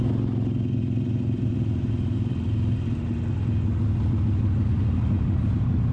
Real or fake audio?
real